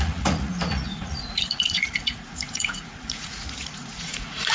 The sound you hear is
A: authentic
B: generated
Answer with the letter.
B